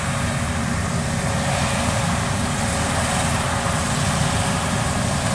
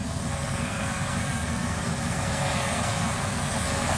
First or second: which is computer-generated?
second